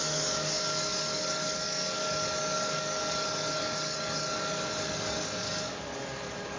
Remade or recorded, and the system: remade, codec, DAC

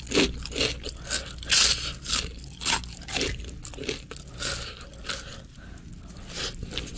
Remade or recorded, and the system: recorded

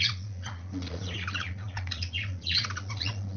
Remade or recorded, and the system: remade, vocoder, Vocos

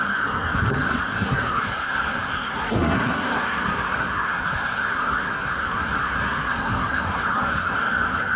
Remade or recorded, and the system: remade, codec, SNAC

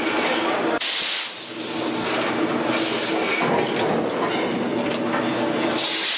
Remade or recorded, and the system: recorded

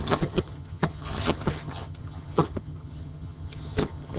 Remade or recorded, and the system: remade, vocoder, HiFi-GAN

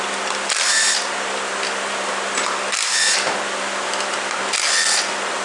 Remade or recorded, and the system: recorded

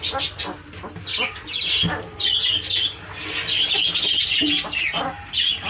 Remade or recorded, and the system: recorded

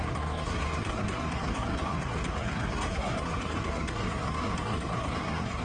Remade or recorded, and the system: remade, codec, SNAC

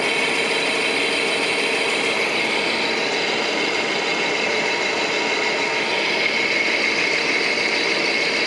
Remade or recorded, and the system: recorded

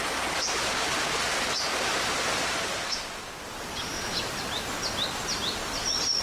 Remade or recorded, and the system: recorded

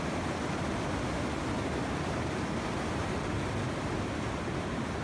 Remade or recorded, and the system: recorded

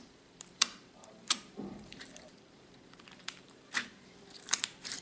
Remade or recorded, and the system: remade, vocoder, BigVGAN v2